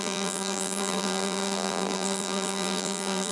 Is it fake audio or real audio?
fake